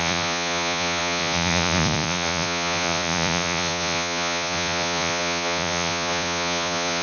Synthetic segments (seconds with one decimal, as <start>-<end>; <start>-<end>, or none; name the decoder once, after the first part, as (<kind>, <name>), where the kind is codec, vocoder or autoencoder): 0.0-7.0 (vocoder, Vocos)